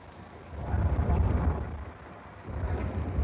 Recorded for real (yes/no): yes